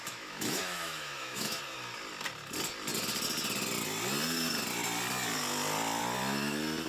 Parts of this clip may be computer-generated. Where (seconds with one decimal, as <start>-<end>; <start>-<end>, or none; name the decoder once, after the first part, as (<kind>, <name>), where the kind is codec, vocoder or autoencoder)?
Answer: 0.0-1.6 (autoencoder, DAC-VAE)